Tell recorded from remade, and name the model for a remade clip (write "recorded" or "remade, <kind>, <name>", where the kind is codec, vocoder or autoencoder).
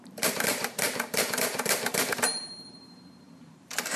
remade, vocoder, BigVGAN v2